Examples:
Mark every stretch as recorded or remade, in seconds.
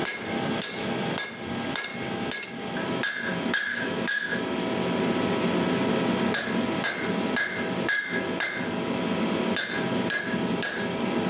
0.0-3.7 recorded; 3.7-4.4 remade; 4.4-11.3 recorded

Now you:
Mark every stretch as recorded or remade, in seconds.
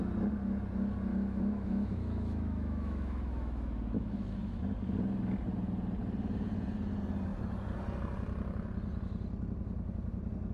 0.0-1.1 recorded; 1.1-4.6 remade; 4.6-10.5 recorded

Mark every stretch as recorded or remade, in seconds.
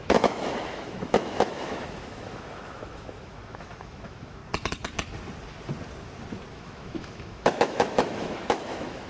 0.0-4.4 remade; 4.4-6.5 recorded; 6.5-9.1 remade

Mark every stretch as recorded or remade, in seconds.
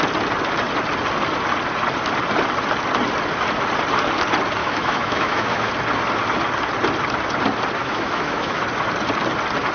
0.0-4.6 recorded; 4.6-5.7 remade; 5.7-7.8 recorded; 7.8-8.6 remade; 8.6-9.7 recorded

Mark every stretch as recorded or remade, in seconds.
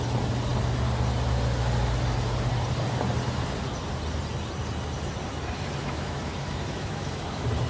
0.0-5.8 recorded; 5.8-7.2 remade; 7.2-7.7 recorded